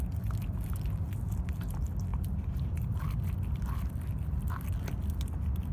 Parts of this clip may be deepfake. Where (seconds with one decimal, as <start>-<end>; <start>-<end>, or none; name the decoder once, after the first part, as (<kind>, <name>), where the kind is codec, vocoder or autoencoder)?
none